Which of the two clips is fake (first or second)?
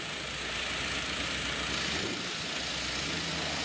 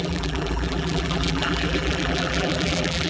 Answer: second